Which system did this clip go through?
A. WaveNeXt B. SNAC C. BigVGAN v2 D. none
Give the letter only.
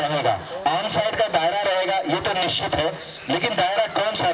D